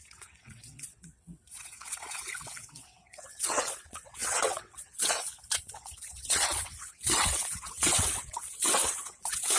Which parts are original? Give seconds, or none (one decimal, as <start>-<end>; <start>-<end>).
none